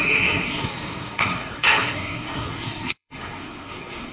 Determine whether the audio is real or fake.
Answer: fake